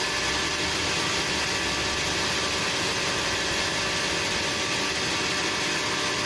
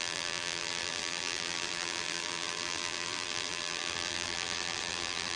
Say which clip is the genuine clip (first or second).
first